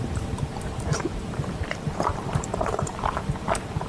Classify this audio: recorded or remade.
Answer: remade